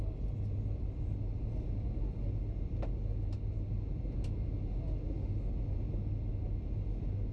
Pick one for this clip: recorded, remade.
recorded